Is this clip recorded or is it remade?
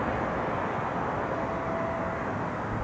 recorded